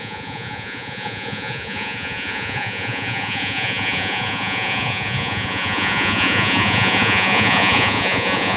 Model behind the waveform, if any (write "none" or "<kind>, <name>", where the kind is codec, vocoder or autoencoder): vocoder, Vocos